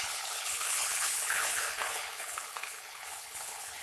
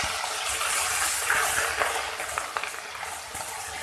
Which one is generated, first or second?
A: first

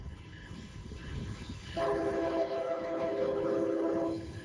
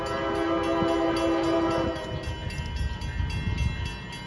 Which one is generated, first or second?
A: first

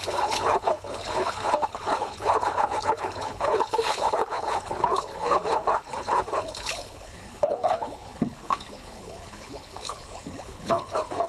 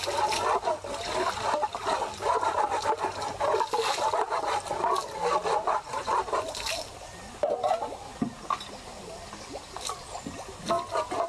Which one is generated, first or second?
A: first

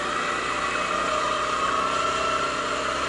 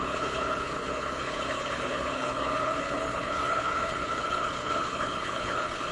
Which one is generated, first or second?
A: second